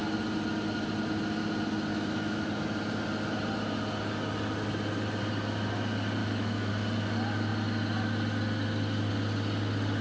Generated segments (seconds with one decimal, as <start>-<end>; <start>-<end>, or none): 1.9-2.4; 6.2-6.7